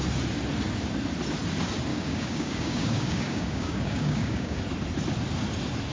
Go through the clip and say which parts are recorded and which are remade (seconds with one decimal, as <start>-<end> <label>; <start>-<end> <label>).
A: 0.0-1.9 recorded; 1.9-4.6 remade; 4.6-5.9 recorded